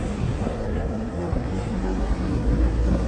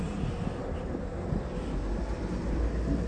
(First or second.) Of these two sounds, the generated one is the first